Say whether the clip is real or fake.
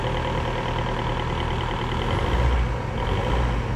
real